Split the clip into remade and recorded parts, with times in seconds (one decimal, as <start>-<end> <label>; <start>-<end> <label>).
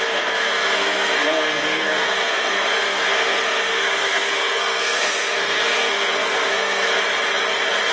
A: 0.0-6.9 remade; 6.9-7.9 recorded